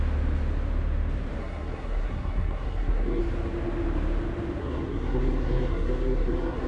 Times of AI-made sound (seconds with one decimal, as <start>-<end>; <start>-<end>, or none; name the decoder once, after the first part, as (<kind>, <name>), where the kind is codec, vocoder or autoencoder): 1.4-3.2 (codec, SNAC); 4.6-6.7